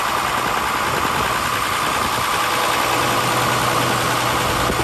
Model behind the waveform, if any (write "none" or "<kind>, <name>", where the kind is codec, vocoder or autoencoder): none